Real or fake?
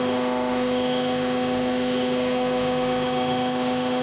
fake